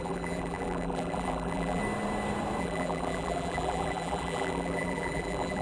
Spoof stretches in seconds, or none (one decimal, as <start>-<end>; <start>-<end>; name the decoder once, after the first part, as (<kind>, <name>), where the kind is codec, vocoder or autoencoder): 0.0-1.8 (vocoder, BigVGAN v2); 2.6-5.6